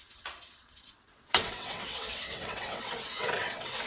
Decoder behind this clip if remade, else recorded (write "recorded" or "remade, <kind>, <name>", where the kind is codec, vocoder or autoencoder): remade, vocoder, WaveNeXt